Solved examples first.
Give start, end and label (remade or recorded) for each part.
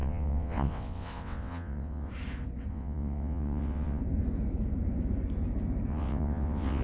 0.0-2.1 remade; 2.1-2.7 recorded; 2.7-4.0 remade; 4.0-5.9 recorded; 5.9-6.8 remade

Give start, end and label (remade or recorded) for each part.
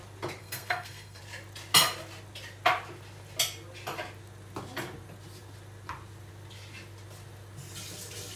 0.0-0.4 recorded; 0.4-1.2 remade; 1.2-8.4 recorded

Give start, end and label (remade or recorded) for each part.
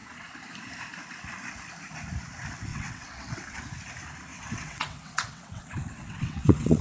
0.0-2.7 recorded; 2.7-3.6 remade; 3.6-4.3 recorded; 4.3-6.8 remade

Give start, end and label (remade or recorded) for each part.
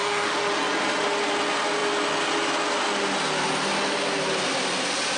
0.0-0.5 remade; 0.5-5.2 recorded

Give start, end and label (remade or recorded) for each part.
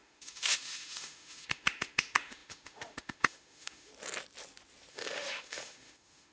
0.0-3.9 remade; 3.9-4.9 recorded; 4.9-6.3 remade